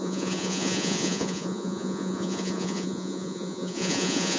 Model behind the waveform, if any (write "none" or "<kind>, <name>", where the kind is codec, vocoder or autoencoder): vocoder, Vocos